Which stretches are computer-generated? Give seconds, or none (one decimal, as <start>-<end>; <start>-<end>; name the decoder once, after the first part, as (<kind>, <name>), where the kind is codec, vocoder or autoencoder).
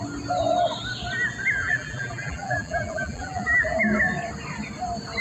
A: 1.6-3.8 (vocoder, BigVGAN v2)